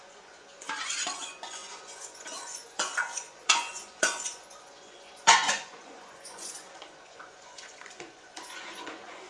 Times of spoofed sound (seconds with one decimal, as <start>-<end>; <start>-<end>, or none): 0.0-9.3